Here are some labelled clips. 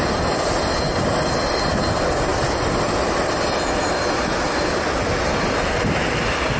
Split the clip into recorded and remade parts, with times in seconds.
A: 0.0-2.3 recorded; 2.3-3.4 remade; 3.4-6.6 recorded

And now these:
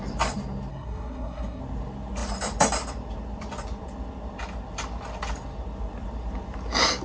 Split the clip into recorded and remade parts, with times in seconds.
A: 0.0-0.7 recorded; 0.7-1.6 remade; 1.6-7.0 recorded

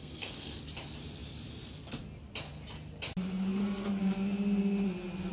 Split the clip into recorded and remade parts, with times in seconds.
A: 0.0-0.6 remade; 0.6-5.3 recorded